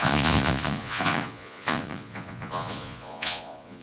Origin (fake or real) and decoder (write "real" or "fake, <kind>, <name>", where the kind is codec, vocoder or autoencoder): fake, vocoder, Vocos